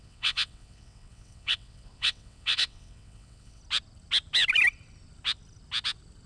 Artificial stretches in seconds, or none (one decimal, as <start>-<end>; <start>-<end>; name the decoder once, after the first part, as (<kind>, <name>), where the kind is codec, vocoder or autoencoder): 0.0-3.6 (vocoder, WaveNeXt)